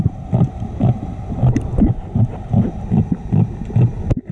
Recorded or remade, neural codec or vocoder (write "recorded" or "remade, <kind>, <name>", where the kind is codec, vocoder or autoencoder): recorded